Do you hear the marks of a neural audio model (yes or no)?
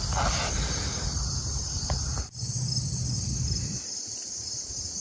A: no